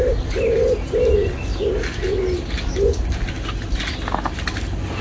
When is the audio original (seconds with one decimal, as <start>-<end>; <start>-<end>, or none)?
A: 0.0-5.0